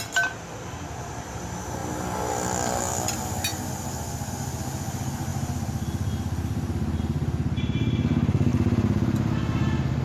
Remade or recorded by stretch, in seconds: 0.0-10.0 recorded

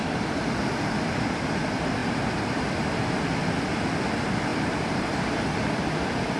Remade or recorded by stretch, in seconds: 0.0-4.5 recorded; 4.5-5.4 remade; 5.4-6.4 recorded

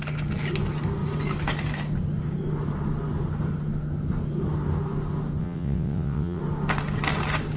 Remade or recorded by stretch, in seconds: 0.0-5.4 recorded; 5.4-6.4 remade; 6.4-7.6 recorded

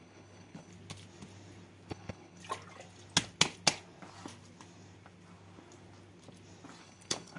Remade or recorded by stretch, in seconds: 0.0-0.7 remade; 0.7-1.9 recorded; 1.9-2.4 remade; 2.4-6.8 recorded; 6.8-7.4 remade

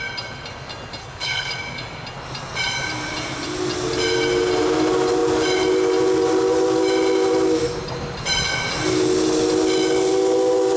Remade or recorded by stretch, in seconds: 0.0-1.0 recorded; 1.0-1.5 remade; 1.5-10.8 recorded

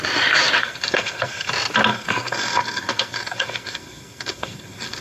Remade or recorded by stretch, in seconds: 0.0-0.6 recorded; 0.6-1.5 remade; 1.5-1.9 recorded; 1.9-5.0 remade

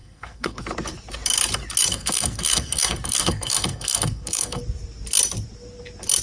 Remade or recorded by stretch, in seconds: 0.0-0.6 remade; 0.6-1.9 recorded; 1.9-4.6 remade; 4.6-6.2 recorded

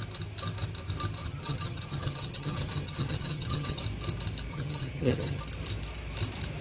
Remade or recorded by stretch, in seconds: 0.0-1.2 recorded; 1.2-3.8 remade; 3.8-4.5 recorded; 4.5-5.4 remade; 5.4-6.6 recorded